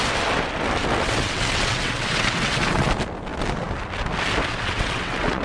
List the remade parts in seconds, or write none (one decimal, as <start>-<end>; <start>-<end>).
1.0-2.9; 4.5-5.4